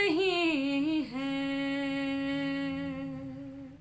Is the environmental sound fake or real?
real